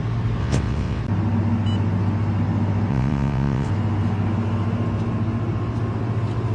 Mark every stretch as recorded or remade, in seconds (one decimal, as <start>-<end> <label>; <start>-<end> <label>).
0.0-0.4 recorded; 0.4-1.0 remade; 1.0-2.9 recorded; 2.9-3.7 remade; 3.7-6.5 recorded